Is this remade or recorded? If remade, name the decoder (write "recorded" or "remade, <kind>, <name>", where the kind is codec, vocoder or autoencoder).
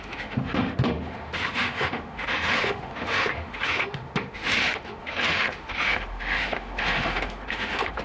remade, autoencoder, DAC-VAE